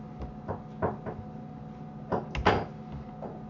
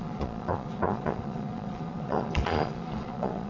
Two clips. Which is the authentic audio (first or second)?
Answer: first